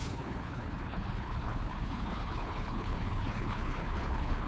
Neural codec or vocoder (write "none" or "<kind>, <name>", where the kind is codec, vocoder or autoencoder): codec, HILCodec